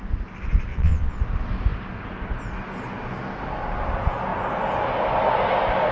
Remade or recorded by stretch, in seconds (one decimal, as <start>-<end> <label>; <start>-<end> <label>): 0.0-0.7 recorded; 0.7-1.2 remade; 1.2-5.9 recorded

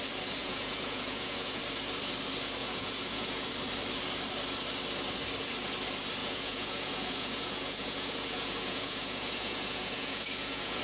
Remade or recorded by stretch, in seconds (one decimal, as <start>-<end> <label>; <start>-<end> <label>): 0.0-0.4 recorded; 0.4-1.6 remade; 1.6-2.6 recorded; 2.6-3.5 remade; 3.5-6.2 recorded; 6.2-10.8 remade